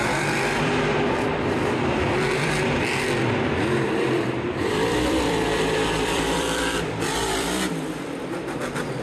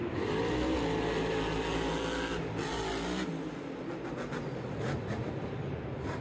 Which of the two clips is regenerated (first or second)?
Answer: first